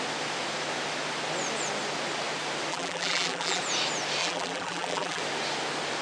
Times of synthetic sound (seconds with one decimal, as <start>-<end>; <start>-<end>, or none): 2.7-3.6; 4.2-5.2